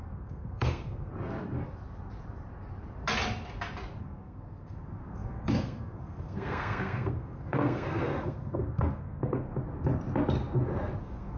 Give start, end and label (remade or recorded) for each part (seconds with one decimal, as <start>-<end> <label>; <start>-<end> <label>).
0.0-1.1 remade; 1.1-4.0 recorded; 4.0-9.5 remade; 9.5-11.0 recorded; 11.0-11.4 remade